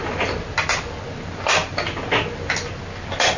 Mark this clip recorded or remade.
recorded